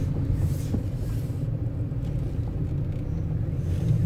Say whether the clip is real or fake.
real